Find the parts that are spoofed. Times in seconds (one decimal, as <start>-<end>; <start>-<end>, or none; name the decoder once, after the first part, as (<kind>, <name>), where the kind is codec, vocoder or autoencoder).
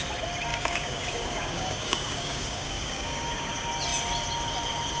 0.5-3.5 (codec, DAC)